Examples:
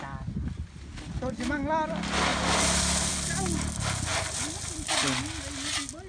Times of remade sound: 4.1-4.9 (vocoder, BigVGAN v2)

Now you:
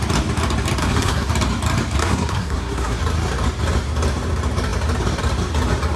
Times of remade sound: 0.8-1.3 (codec, SNAC); 2.0-3.0

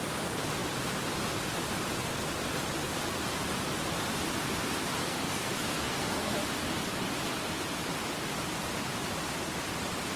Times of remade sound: 5.0-6.3 (codec, SNAC)